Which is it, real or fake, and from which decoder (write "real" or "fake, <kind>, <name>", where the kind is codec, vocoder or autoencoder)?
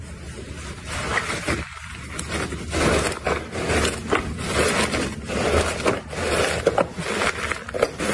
real